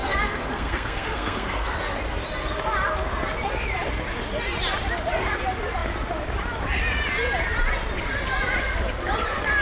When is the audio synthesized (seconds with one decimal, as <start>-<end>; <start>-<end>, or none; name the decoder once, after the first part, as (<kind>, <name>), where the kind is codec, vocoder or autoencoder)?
0.0-1.8 (codec, SNAC)